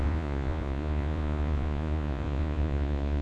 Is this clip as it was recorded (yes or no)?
no